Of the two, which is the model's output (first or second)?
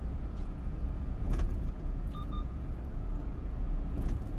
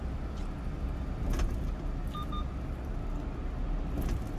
first